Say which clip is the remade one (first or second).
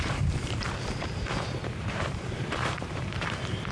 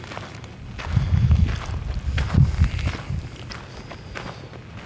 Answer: first